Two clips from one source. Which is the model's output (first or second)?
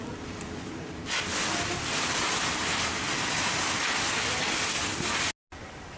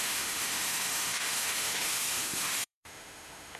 second